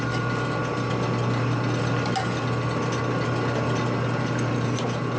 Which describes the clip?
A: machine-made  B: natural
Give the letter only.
B